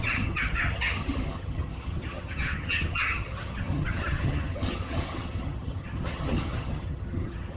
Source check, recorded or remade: remade